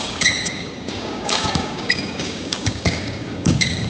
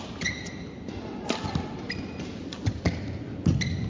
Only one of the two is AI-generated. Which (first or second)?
first